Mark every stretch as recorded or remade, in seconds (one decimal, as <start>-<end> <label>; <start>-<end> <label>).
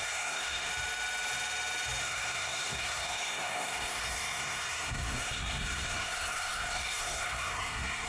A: 0.0-0.7 remade; 0.7-2.0 recorded; 2.0-8.1 remade